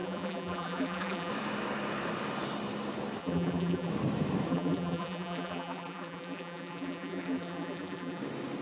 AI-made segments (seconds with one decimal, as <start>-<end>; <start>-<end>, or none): 0.0-1.3; 3.2-3.9; 4.5-8.2